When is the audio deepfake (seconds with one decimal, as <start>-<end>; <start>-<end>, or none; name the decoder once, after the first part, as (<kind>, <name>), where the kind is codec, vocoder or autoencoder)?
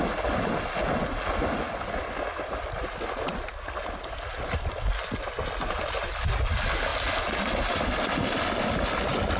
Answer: none